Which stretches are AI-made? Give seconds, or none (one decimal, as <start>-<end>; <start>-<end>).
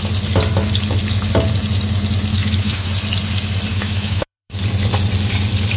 2.3-2.9; 3.7-4.6